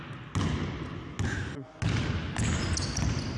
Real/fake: real